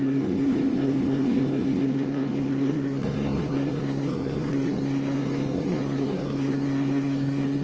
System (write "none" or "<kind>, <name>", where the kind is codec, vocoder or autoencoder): codec, SNAC